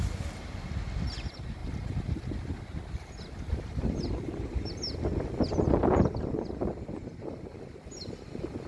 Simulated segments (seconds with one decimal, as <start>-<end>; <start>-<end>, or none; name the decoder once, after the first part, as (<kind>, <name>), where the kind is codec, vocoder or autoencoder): none